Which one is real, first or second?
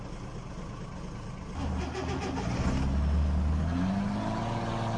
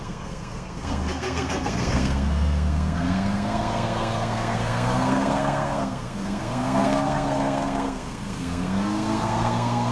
first